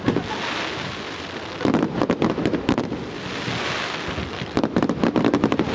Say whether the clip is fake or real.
real